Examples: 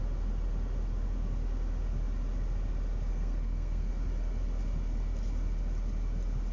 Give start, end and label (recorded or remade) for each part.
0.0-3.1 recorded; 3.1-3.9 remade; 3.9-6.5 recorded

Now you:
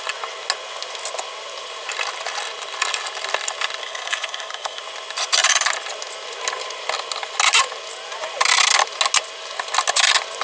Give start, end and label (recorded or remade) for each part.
0.0-3.8 recorded; 3.8-4.8 remade; 4.8-10.4 recorded

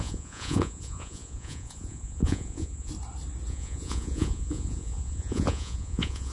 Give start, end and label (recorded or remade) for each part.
0.0-2.9 remade; 2.9-3.5 recorded; 3.5-6.3 remade

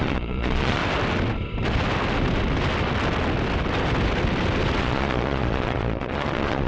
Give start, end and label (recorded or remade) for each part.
0.0-0.8 remade; 0.8-4.8 recorded; 4.8-6.7 remade